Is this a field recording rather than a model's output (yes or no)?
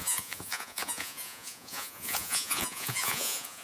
no